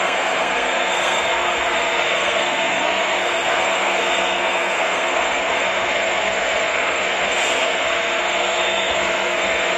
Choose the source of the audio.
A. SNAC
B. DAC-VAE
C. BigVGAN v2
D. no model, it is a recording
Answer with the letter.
A